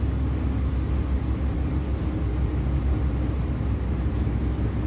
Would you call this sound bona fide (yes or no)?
yes